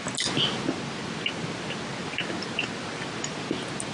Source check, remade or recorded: recorded